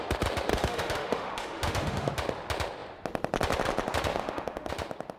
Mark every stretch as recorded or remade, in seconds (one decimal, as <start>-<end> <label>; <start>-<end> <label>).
0.0-0.5 recorded; 0.5-2.1 remade; 2.1-4.1 recorded; 4.1-4.7 remade; 4.7-5.2 recorded